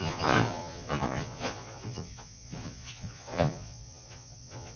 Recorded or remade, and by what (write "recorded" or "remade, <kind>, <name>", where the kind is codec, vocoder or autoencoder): remade, vocoder, Vocos